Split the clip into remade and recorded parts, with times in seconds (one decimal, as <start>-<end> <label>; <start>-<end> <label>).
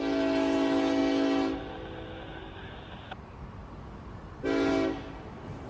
0.0-5.7 recorded